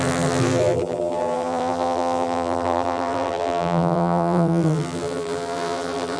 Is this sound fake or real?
fake